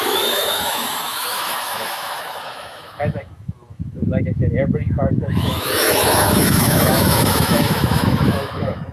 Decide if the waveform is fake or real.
fake